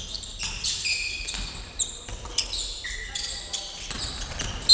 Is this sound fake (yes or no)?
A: no